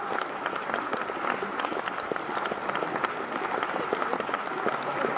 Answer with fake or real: real